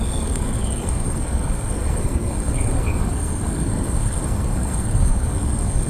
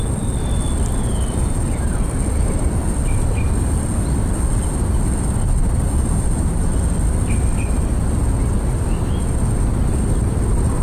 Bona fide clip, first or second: second